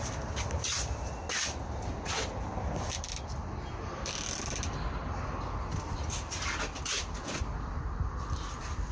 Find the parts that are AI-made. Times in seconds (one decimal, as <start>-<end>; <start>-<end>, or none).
0.0-1.2; 1.9-8.9